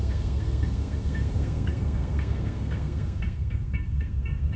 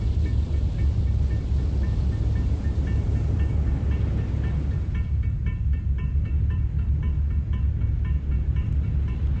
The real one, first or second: second